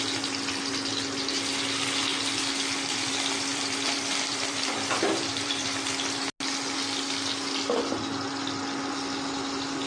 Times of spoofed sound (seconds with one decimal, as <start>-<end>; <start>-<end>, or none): 3.5-6.2